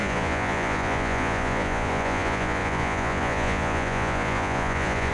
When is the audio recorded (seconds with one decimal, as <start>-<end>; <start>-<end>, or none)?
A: none